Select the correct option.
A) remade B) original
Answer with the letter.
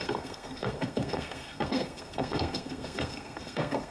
A